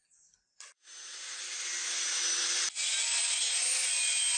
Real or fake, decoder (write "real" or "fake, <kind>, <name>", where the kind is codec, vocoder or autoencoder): real